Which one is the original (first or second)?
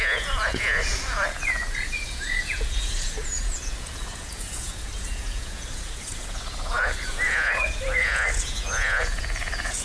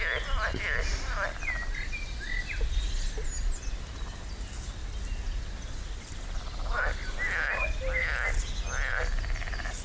second